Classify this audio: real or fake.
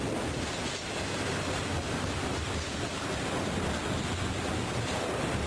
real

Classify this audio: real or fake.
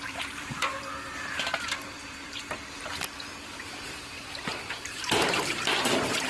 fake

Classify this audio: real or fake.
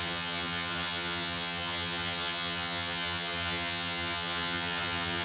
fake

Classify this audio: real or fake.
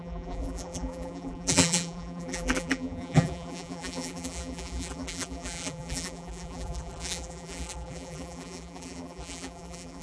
fake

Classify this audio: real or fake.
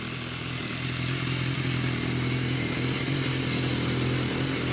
real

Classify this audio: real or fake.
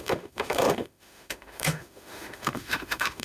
fake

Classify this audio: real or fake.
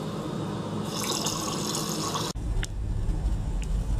real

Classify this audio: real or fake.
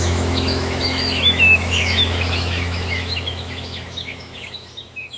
fake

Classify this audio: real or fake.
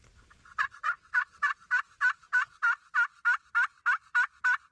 real